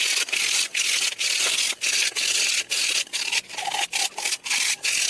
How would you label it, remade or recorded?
recorded